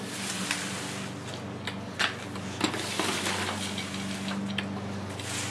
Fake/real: real